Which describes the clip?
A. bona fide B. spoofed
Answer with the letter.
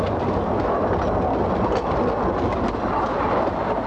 A